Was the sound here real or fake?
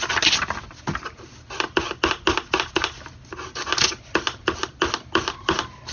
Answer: real